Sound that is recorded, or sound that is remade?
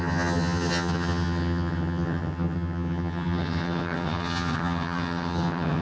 remade